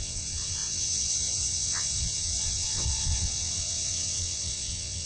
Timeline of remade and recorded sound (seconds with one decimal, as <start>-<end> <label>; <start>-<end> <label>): 0.0-5.1 remade